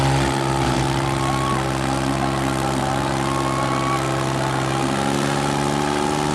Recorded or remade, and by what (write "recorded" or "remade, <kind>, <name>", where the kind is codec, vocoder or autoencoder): recorded